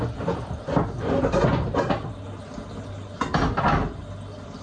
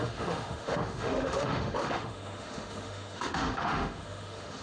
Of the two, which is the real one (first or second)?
first